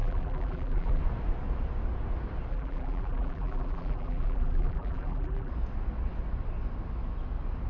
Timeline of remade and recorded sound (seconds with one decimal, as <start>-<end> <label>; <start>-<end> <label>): 0.0-1.0 remade; 1.0-2.5 recorded; 2.5-5.5 remade; 5.5-7.7 recorded